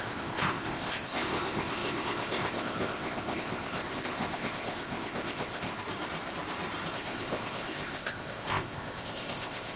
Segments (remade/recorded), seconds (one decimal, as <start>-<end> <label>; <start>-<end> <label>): 0.0-5.7 remade; 5.7-6.9 recorded; 6.9-9.8 remade